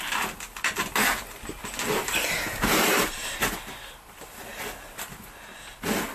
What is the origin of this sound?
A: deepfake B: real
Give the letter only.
B